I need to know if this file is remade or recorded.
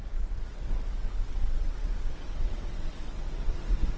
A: remade